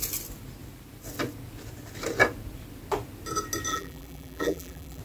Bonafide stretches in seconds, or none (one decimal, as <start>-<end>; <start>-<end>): 0.0-3.7